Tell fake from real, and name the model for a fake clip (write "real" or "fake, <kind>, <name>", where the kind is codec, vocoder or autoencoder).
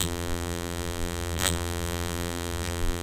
fake, vocoder, BigVGAN v2